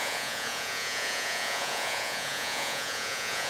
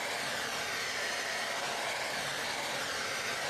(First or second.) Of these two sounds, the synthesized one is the first